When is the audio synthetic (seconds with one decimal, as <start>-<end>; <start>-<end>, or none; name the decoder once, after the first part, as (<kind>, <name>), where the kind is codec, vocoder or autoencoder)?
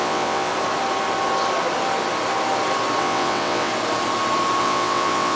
0.0-0.5 (vocoder, WaveNeXt); 3.0-3.7; 4.6-5.4